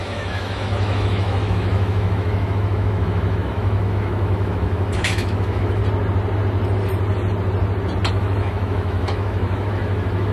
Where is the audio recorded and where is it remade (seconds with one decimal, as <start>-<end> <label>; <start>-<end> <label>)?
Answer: 0.0-5.8 remade; 5.8-8.1 recorded; 8.1-10.3 remade